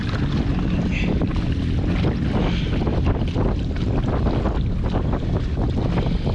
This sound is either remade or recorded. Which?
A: recorded